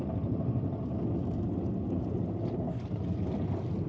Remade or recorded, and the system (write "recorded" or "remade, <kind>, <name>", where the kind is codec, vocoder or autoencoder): recorded